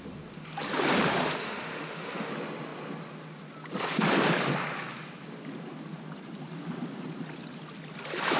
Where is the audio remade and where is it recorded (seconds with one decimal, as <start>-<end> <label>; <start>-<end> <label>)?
0.0-1.4 recorded; 1.4-2.3 remade; 2.3-8.4 recorded